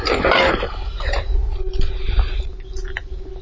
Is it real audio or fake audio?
real